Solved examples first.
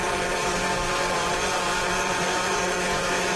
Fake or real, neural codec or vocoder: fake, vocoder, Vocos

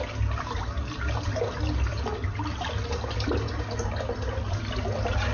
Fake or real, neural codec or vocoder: real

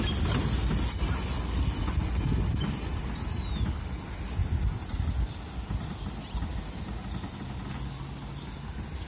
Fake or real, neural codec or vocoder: real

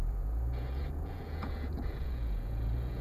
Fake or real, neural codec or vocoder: fake, vocoder, Vocos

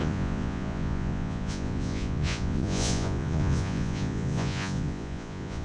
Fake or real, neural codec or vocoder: fake, vocoder, Vocos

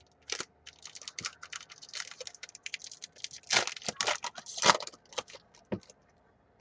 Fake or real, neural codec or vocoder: real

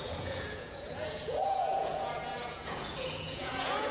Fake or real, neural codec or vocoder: fake, vocoder, Vocos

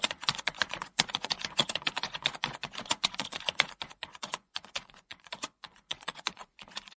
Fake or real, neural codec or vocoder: fake, vocoder, Vocos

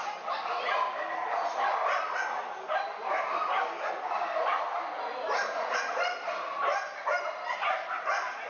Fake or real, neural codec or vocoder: real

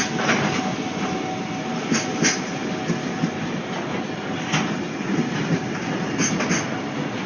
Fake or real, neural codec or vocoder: real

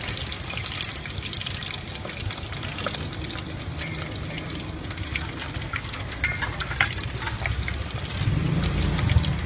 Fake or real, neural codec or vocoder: real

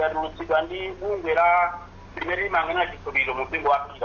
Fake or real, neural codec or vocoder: real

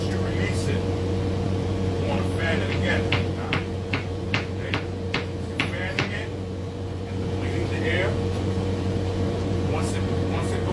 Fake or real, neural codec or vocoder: fake, vocoder, Vocos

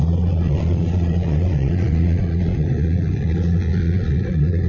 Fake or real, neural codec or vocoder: fake, vocoder, Vocos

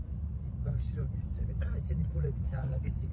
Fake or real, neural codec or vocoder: fake, vocoder, Vocos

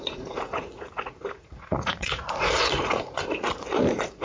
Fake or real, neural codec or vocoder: fake, vocoder, Vocos